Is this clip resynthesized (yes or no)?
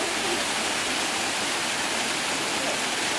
no